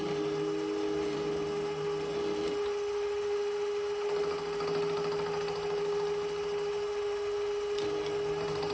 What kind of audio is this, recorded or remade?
recorded